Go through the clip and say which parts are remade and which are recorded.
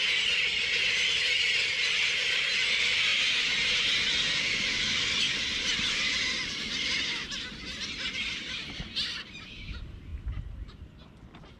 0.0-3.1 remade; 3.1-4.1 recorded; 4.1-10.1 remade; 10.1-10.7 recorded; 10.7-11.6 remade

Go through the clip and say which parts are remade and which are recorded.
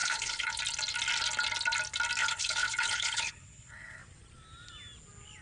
0.0-0.6 remade; 0.6-2.2 recorded; 2.2-4.0 remade; 4.0-5.4 recorded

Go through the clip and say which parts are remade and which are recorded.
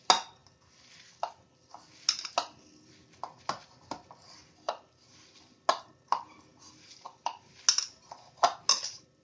0.0-6.5 recorded; 6.5-7.5 remade; 7.5-9.2 recorded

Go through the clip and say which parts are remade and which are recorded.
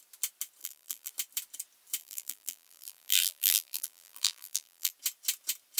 0.0-0.6 recorded; 0.6-1.1 remade; 1.1-2.0 recorded; 2.0-4.9 remade; 4.9-5.8 recorded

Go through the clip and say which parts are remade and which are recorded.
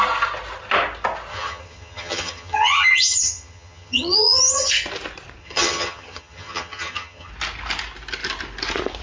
0.0-1.3 recorded; 1.3-4.7 remade; 4.7-5.4 recorded; 5.4-7.3 remade; 7.3-9.0 recorded